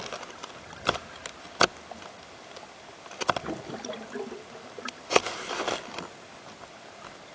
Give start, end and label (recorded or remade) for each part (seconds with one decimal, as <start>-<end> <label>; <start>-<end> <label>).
0.0-7.3 recorded